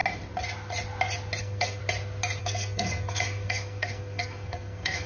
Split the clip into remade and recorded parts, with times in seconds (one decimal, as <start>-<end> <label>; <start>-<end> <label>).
0.0-1.4 recorded; 1.4-1.8 remade; 1.8-2.4 recorded; 2.4-5.1 remade